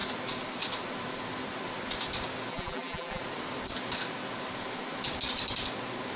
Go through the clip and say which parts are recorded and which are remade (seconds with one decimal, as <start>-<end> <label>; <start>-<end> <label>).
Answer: 0.0-2.5 recorded; 2.5-3.2 remade; 3.2-6.2 recorded